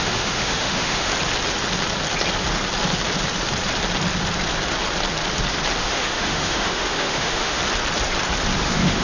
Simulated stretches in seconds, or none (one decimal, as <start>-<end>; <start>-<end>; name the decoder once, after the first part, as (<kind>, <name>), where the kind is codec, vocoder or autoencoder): 0.0-1.1 (autoencoder, DAC-VAE); 5.8-7.6; 8.6-9.0